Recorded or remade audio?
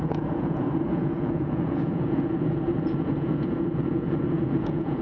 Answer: remade